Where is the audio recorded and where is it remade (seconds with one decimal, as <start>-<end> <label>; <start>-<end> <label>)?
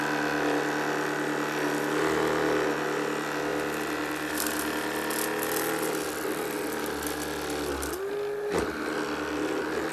0.0-9.9 recorded